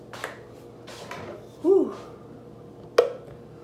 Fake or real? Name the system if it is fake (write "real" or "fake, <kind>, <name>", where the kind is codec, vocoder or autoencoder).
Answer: real